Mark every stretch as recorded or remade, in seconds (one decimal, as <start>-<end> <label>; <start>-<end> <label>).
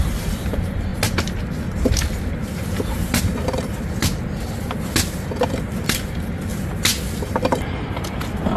0.0-0.9 remade; 0.9-5.9 recorded; 5.9-6.5 remade; 6.5-7.2 recorded; 7.2-8.6 remade